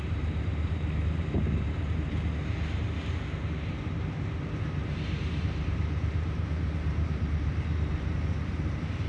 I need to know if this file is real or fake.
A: fake